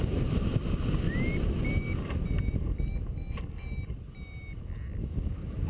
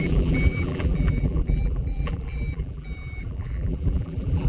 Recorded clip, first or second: first